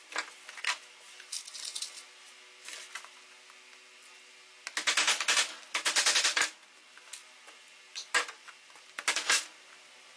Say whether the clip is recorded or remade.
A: recorded